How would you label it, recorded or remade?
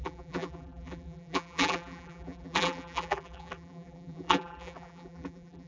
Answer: remade